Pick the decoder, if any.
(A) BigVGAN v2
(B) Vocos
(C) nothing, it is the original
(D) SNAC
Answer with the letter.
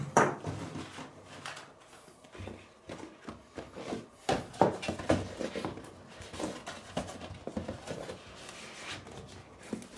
C